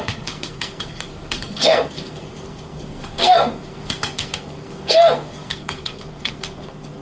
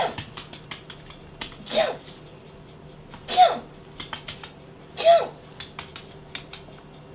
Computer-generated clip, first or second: first